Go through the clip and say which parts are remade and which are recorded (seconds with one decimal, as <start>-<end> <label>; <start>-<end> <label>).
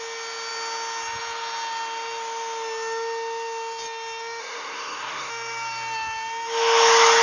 0.0-4.4 recorded; 4.4-5.3 remade; 5.3-7.2 recorded